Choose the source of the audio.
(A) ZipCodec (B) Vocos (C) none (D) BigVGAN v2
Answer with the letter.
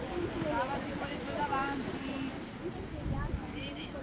C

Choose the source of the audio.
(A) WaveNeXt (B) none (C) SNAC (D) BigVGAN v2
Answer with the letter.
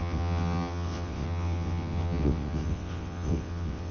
A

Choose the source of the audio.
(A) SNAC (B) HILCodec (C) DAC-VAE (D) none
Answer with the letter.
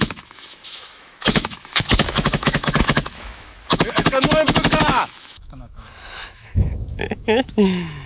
C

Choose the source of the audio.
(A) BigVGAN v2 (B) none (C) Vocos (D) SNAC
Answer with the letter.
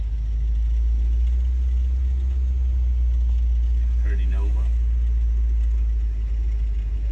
B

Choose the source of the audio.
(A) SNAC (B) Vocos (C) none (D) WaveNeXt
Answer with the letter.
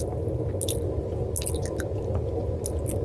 C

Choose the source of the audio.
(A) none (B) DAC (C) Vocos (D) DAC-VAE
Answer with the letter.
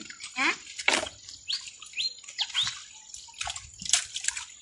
A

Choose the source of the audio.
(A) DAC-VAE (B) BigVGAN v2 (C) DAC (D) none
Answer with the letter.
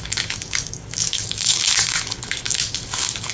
C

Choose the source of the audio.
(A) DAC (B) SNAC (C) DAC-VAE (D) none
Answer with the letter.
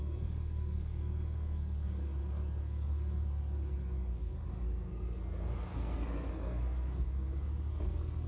B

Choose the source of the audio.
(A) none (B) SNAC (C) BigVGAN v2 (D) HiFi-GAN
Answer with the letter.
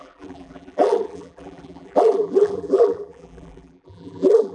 C